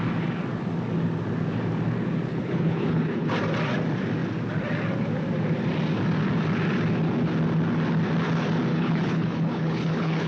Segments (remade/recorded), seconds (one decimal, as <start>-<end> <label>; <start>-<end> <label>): 0.0-2.3 recorded; 2.3-3.3 remade; 3.3-8.7 recorded; 8.7-10.3 remade